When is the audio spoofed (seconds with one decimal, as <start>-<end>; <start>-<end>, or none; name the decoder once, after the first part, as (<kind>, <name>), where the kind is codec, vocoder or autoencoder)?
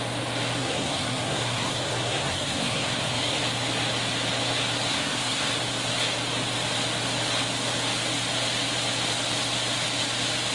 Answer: 0.6-3.4 (codec, SNAC); 4.9-5.5